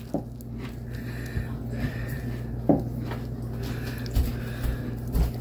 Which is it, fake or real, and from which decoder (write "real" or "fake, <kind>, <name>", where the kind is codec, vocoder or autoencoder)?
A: real